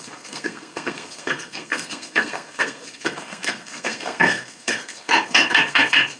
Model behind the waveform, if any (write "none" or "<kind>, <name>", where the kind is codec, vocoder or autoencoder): codec, SNAC